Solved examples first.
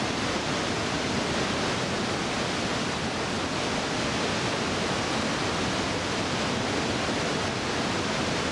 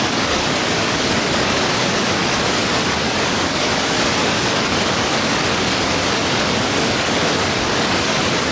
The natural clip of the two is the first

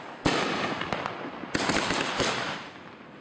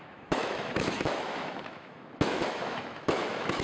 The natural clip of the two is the first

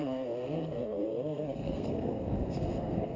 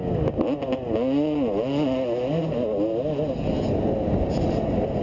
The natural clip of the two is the second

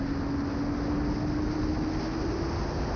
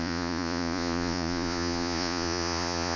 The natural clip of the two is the first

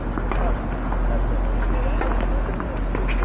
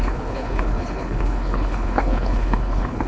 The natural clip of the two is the first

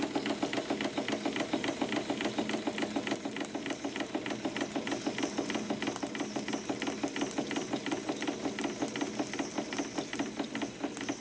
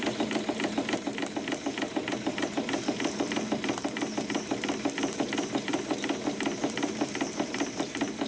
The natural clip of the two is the first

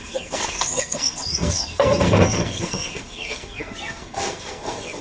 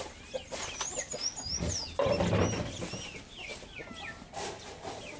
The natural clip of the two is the second